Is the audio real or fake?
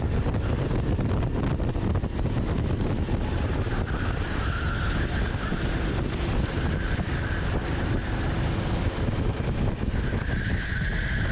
real